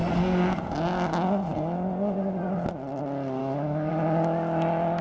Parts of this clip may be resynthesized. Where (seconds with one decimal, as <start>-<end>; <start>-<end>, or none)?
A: 3.4-3.9